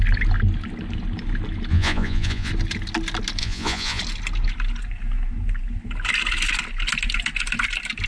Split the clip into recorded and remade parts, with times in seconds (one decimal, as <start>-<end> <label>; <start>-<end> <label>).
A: 0.0-1.7 recorded; 1.7-2.5 remade; 2.5-3.4 recorded; 3.4-4.0 remade; 4.0-8.1 recorded